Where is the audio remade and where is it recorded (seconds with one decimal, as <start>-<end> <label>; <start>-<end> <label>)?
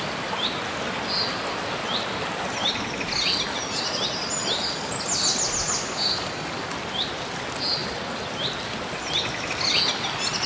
0.0-10.5 recorded